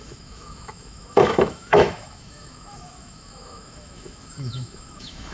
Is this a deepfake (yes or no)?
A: yes